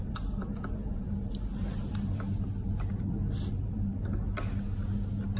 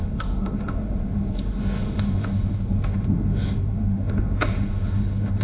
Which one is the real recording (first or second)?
first